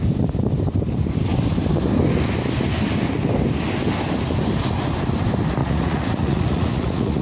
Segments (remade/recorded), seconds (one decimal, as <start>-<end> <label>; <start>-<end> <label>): 0.0-5.6 recorded; 5.6-7.2 remade